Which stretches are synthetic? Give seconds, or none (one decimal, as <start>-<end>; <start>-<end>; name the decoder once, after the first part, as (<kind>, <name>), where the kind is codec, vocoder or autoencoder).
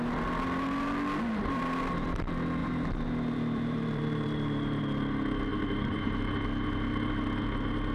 2.6-4.8 (vocoder, BigVGAN v2); 5.5-6.2